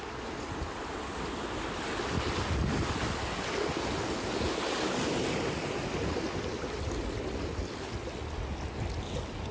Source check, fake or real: real